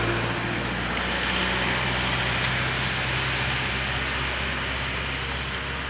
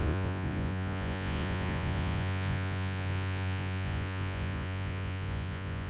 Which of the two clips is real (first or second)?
first